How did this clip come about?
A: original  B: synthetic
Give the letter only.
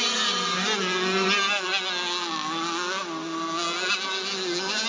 A